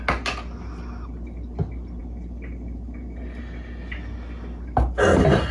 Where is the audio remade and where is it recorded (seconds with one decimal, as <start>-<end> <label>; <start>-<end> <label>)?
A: 0.0-5.5 recorded